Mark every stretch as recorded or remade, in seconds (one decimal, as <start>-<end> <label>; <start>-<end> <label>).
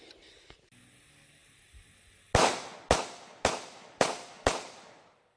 0.0-5.4 recorded